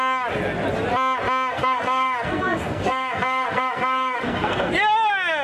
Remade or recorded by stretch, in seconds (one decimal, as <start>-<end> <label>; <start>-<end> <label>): 0.0-1.5 recorded; 1.5-4.7 remade; 4.7-5.4 recorded